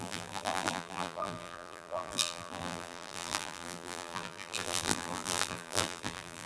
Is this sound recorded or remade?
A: remade